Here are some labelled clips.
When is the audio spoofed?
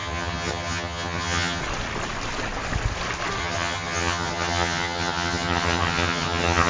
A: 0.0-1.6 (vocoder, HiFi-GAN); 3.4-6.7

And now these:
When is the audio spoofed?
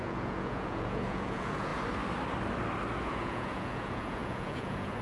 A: 0.0-1.7 (vocoder, Vocos); 3.0-5.0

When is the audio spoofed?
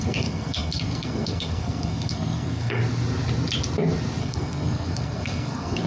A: 0.0-2.8 (codec, SNAC); 4.2-5.9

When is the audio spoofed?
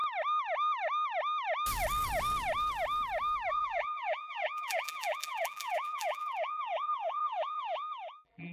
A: 3.5-8.5 (vocoder, BigVGAN v2)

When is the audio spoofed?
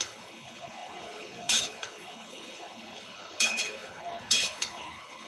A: 0.0-5.3 (codec, HILCodec)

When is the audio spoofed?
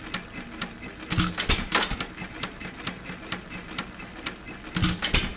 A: none